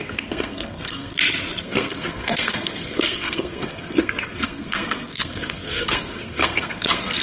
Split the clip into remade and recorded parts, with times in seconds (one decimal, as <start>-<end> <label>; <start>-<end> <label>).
0.0-1.1 remade; 1.1-1.6 recorded; 1.6-7.2 remade